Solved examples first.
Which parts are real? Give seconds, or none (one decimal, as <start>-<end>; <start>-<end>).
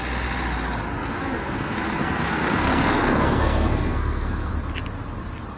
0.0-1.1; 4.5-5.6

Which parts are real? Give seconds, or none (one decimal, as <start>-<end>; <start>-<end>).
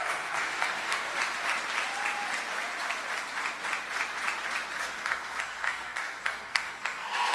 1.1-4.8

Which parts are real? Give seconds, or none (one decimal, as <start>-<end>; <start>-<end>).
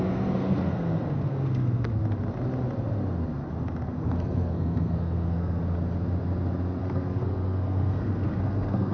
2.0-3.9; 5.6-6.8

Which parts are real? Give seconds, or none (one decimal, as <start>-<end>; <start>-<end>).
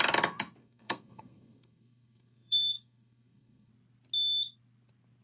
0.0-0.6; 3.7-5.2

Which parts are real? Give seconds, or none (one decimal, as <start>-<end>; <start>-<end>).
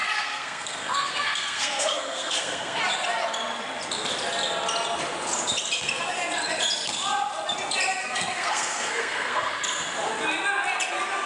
2.8-8.0; 9.5-11.3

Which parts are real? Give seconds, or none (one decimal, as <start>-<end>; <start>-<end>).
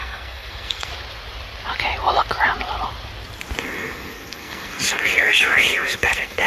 0.9-3.6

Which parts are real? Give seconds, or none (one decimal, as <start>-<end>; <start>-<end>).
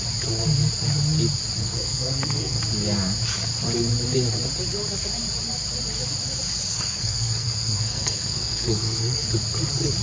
0.0-1.6; 2.6-6.7; 9.3-10.0